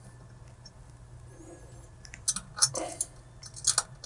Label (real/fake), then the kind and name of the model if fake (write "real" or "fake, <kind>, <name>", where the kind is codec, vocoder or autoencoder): real